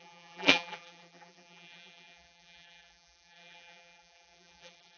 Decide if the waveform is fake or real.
fake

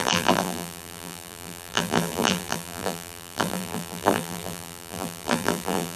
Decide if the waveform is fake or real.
fake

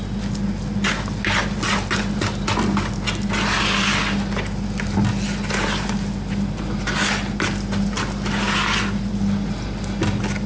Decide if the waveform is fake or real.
real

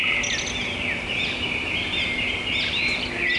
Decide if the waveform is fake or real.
real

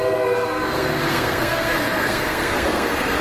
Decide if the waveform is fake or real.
fake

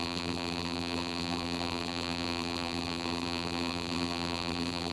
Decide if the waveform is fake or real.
fake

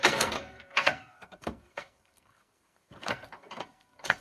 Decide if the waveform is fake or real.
fake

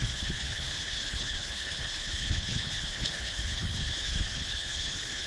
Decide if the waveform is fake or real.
fake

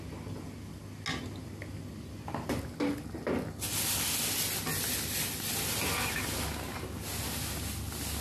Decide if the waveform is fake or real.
real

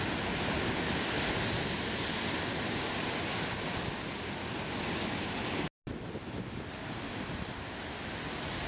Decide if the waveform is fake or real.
real